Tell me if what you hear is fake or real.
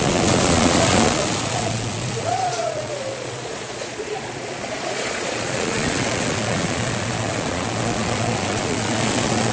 fake